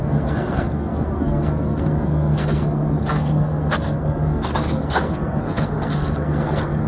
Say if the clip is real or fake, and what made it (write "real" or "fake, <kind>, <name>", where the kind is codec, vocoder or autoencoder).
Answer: fake, codec, SNAC